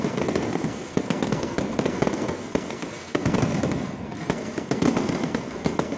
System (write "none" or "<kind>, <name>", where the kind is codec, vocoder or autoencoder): codec, SNAC